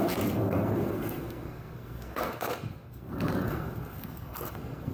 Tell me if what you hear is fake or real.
fake